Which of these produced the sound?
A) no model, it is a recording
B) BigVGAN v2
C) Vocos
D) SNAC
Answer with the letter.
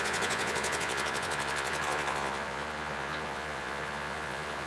C